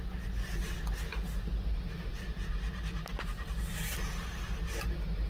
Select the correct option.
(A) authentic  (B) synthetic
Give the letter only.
A